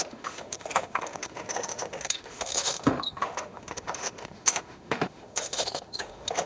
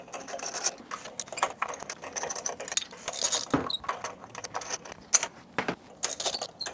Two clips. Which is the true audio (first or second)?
second